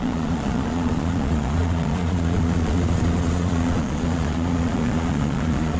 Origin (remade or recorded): remade